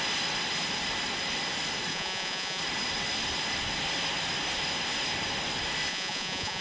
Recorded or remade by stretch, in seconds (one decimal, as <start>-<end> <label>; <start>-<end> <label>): 0.0-1.9 recorded; 1.9-2.6 remade; 2.6-5.9 recorded; 5.9-6.6 remade